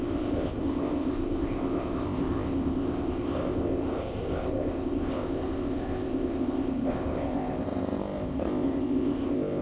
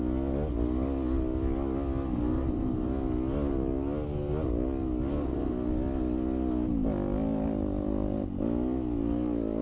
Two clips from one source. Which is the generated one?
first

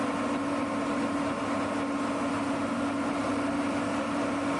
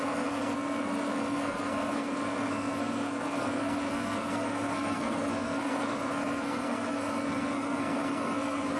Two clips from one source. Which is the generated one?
second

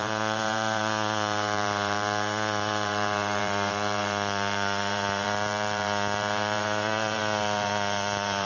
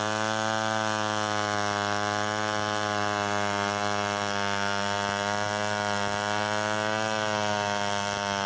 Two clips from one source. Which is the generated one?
first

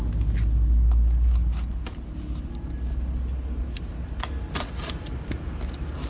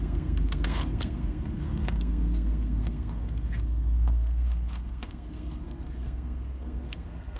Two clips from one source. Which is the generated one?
second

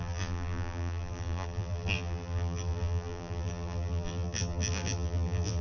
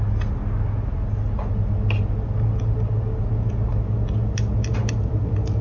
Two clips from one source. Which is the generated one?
first